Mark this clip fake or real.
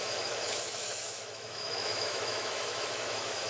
fake